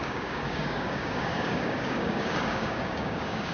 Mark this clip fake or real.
fake